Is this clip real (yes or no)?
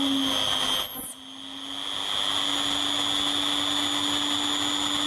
yes